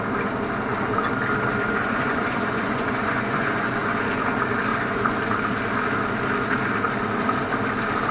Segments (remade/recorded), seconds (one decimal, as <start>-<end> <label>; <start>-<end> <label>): 0.0-1.8 recorded; 1.8-4.0 remade; 4.0-4.7 recorded; 4.7-5.2 remade; 5.2-8.1 recorded

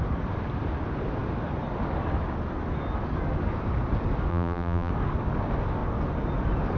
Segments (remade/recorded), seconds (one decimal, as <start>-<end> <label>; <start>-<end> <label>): 0.0-4.3 recorded; 4.3-4.9 remade; 4.9-6.8 recorded

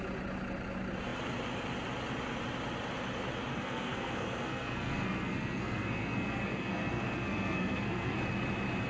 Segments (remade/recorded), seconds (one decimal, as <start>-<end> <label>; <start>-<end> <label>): 0.0-3.5 recorded; 3.5-8.2 remade; 8.2-8.9 recorded

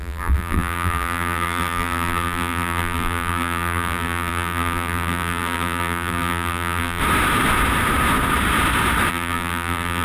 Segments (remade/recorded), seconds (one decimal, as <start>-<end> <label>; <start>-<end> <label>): 0.0-7.0 remade; 7.0-9.1 recorded; 9.1-10.0 remade

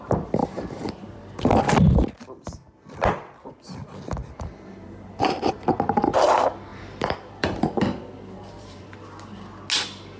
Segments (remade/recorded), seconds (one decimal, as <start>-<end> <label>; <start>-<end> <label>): 0.0-0.4 recorded; 0.4-1.6 remade; 1.6-4.2 recorded; 4.2-5.5 remade; 5.5-6.7 recorded; 6.7-8.8 remade; 8.8-10.2 recorded

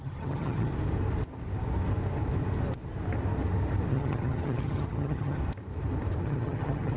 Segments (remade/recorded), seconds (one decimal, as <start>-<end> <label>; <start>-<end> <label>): 0.0-0.7 remade; 0.7-3.9 recorded; 3.9-5.4 remade; 5.4-6.2 recorded; 6.2-7.0 remade

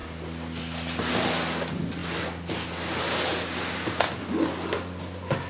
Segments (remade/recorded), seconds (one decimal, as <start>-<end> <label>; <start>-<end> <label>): 0.0-5.5 recorded